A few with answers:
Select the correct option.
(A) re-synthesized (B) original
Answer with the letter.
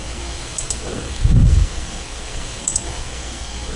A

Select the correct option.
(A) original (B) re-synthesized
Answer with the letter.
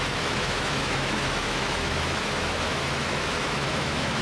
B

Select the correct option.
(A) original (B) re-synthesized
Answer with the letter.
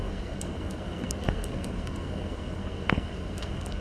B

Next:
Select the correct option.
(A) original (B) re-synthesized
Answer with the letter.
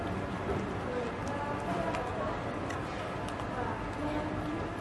A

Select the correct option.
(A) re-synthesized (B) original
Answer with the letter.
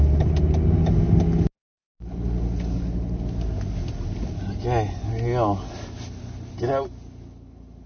B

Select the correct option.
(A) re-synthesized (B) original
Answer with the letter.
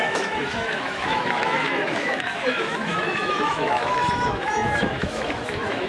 A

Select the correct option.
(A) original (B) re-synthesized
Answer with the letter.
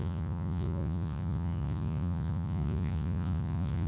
B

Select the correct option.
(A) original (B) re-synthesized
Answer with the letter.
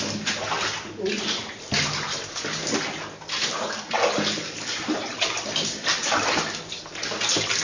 A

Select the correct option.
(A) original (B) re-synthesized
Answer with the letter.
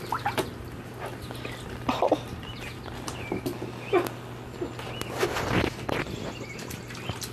A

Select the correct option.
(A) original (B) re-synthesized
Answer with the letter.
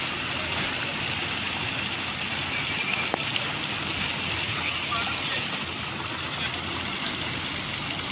A